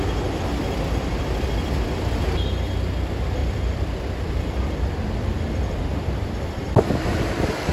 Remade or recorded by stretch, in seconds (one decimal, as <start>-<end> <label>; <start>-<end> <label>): 0.0-3.4 recorded; 3.4-5.5 remade; 5.5-5.9 recorded; 5.9-7.7 remade